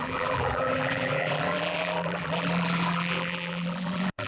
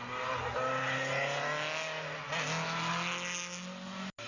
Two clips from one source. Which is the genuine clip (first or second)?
second